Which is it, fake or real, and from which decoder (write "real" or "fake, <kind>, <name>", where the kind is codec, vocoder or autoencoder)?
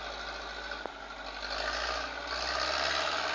real